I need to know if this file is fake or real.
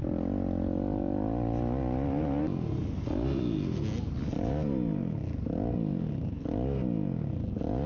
real